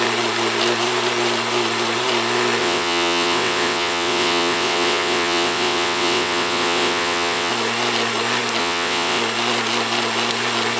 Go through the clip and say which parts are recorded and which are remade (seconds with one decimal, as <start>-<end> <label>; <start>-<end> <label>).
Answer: 0.0-2.6 recorded; 2.6-7.5 remade; 7.5-8.6 recorded; 8.6-9.2 remade; 9.2-10.8 recorded